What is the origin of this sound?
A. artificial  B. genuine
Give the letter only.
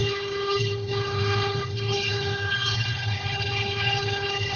A